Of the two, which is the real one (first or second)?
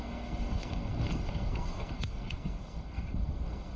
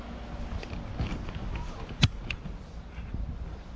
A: second